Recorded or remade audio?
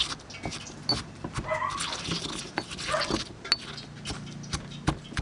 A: recorded